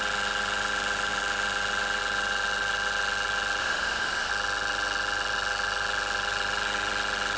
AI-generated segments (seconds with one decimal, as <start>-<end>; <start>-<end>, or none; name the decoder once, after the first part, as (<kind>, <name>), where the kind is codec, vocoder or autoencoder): 3.6-4.3 (autoencoder, DAC-VAE)

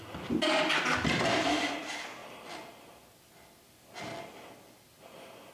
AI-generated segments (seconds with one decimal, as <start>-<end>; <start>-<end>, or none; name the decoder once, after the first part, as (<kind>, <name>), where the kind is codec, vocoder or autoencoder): none